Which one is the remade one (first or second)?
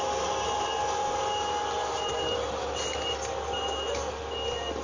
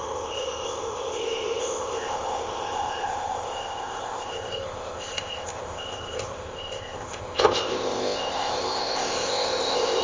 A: second